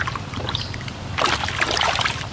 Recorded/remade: recorded